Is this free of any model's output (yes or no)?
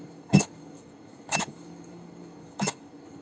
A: no